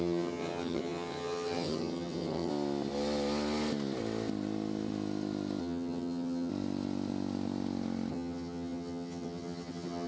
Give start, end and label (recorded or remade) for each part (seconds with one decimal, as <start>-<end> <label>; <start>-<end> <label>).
0.0-2.5 remade; 2.5-5.6 recorded; 5.6-6.5 remade; 6.5-8.1 recorded; 8.1-10.1 remade